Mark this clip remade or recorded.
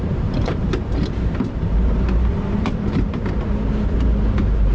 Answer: remade